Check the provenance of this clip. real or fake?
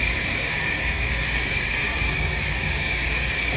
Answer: fake